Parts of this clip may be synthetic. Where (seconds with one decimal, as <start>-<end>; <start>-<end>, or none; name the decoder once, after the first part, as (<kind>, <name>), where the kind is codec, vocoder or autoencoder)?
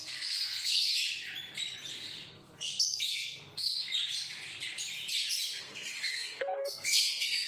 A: 0.0-0.9 (codec, SNAC); 1.9-3.9; 5.6-7.5